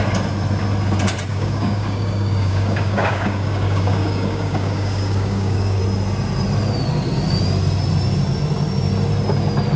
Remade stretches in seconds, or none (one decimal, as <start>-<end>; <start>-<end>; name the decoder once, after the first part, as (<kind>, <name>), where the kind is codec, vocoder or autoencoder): 1.3-5.8 (codec, DAC)

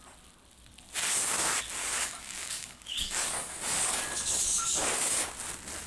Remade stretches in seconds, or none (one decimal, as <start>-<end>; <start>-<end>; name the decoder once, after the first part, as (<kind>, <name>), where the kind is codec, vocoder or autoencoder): 1.8-5.3 (codec, DAC)

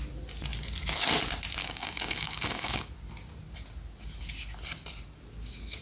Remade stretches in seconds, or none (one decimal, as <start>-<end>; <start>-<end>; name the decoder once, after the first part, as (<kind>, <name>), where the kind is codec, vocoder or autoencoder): 1.6-2.9 (codec, DAC)

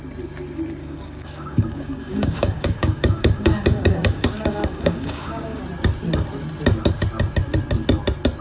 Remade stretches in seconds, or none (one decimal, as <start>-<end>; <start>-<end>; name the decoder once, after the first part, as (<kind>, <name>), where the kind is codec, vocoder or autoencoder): 0.8-5.6 (codec, DAC)

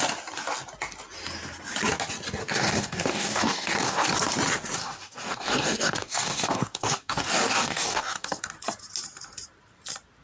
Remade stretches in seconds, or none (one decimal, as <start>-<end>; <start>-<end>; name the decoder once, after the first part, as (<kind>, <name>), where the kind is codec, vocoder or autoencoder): 2.4-4.1 (codec, DAC); 4.8-8.5

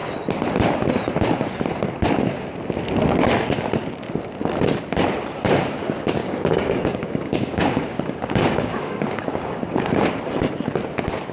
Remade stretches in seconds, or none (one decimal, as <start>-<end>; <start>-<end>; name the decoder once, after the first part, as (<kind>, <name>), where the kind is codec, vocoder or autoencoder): 6.2-10.2 (codec, DAC)